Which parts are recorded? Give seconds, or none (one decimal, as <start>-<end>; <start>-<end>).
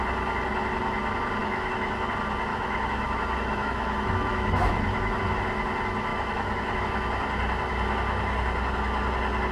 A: 0.0-1.4; 2.1-2.5; 5.4-6.1; 6.8-9.5